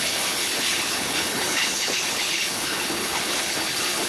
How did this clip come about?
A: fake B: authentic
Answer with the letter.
A